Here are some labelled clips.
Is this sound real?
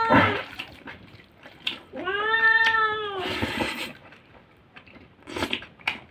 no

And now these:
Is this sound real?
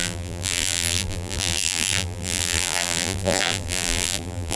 no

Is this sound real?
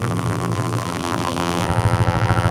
no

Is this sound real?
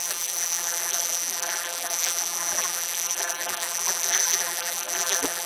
no